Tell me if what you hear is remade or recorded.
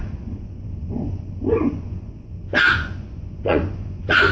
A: remade